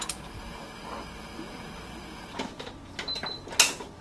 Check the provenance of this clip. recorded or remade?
recorded